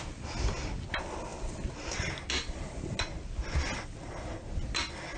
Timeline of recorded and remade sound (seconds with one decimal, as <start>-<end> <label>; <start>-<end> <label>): 0.0-5.2 recorded